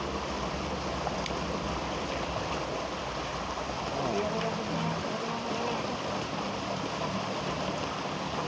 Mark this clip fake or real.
real